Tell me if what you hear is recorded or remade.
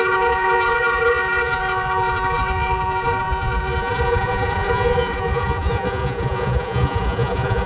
remade